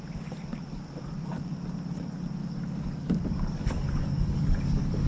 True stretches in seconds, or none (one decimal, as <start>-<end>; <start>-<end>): 0.0-2.4